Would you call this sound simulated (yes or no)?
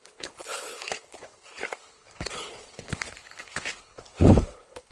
yes